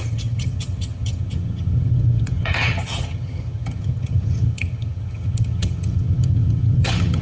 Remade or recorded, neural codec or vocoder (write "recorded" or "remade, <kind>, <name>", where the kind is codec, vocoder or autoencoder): remade, vocoder, HiFi-GAN